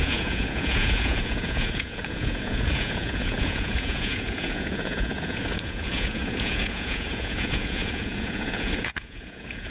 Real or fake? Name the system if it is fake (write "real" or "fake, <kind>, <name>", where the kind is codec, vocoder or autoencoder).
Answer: fake, vocoder, Vocos